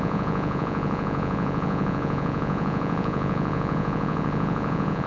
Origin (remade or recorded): remade